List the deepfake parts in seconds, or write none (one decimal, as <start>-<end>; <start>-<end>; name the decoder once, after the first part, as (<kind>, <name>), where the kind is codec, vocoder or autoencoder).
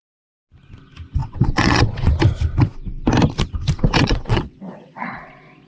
1.2-2.1 (vocoder, WaveNeXt); 4.0-5.3